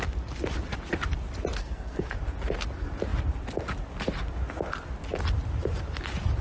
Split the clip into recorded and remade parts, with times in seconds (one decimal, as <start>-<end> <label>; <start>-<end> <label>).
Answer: 0.0-1.6 recorded; 1.6-2.2 remade; 2.2-6.4 recorded